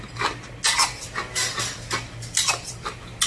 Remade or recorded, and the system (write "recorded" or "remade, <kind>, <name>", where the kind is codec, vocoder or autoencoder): recorded